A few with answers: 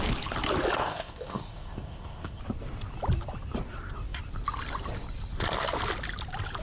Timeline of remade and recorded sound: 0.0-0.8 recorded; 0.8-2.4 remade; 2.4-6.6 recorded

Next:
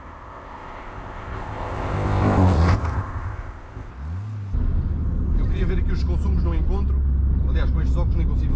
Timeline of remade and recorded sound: 0.0-3.9 remade; 3.9-8.6 recorded

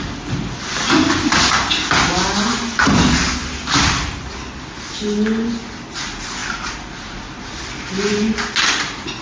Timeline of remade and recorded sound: 0.0-9.2 recorded